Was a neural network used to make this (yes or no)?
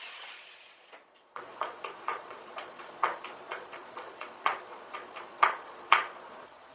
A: yes